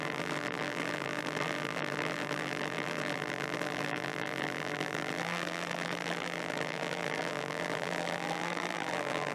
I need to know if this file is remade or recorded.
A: remade